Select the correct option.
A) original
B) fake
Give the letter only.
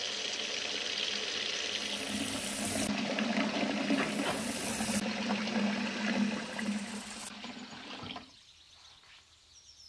A